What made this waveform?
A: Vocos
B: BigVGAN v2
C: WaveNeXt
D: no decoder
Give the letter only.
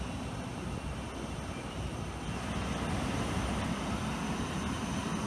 D